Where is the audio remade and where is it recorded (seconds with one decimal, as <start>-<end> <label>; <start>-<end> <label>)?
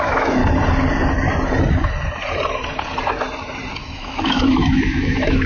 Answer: 0.0-0.4 remade; 0.4-3.7 recorded; 3.7-5.5 remade